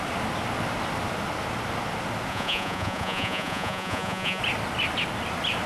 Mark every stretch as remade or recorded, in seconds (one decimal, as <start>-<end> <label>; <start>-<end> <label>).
0.0-2.3 recorded; 2.3-4.4 remade; 4.4-5.7 recorded